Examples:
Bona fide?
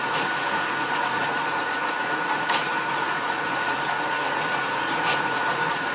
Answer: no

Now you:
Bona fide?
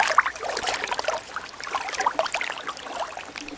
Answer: yes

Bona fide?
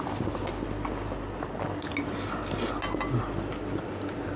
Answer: yes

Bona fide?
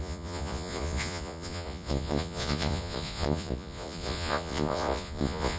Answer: no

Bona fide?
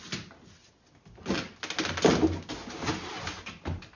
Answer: yes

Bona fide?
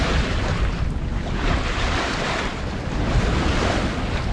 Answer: yes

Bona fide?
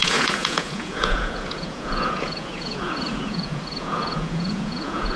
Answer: no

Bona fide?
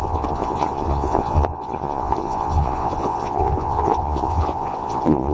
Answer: no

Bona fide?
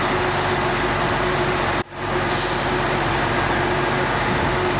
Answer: yes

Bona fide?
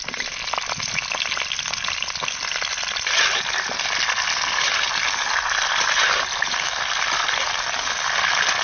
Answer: yes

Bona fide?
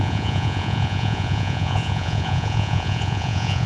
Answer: no